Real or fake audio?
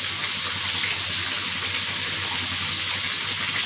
real